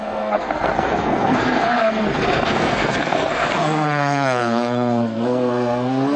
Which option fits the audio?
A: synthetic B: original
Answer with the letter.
A